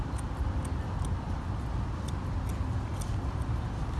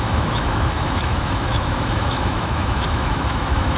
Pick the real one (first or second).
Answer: first